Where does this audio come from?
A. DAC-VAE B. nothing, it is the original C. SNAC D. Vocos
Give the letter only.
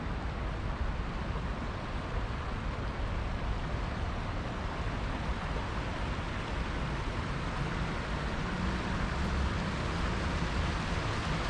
B